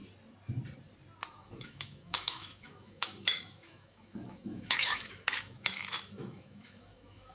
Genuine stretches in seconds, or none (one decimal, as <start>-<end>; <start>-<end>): 0.0-1.3